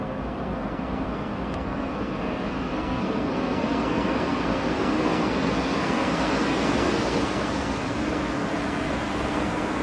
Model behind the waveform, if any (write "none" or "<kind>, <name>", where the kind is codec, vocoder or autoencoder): codec, SNAC